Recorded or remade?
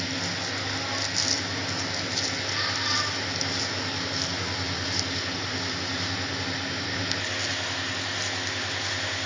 recorded